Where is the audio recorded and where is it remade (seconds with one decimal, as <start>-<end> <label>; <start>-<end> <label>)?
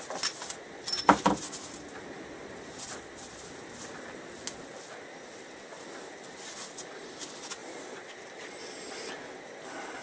0.0-7.6 recorded; 7.6-8.6 remade; 8.6-10.0 recorded